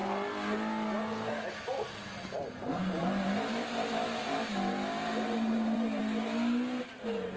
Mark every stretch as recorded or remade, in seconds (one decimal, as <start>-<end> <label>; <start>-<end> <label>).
0.0-2.6 recorded; 2.6-4.5 remade; 4.5-5.0 recorded; 5.0-6.0 remade; 6.0-7.4 recorded